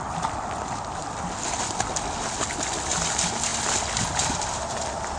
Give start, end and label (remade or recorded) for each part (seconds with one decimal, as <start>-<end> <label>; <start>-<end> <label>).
0.0-5.2 recorded